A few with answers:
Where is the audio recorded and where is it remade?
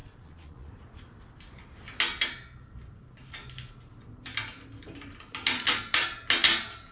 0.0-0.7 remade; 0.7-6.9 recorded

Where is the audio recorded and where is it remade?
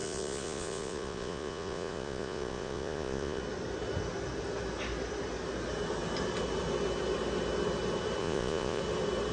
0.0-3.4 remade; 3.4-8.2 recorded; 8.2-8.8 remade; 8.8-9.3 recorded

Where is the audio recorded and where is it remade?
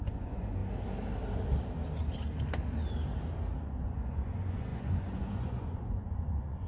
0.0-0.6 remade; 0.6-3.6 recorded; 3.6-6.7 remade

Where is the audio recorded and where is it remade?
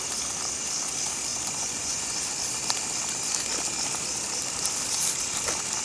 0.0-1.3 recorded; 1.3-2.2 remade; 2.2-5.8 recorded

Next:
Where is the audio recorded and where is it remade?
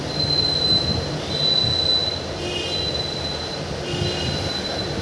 0.0-5.0 recorded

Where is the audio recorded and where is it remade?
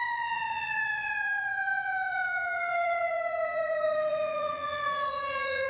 0.0-5.7 remade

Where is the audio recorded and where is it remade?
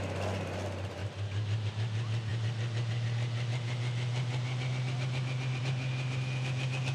0.0-6.9 recorded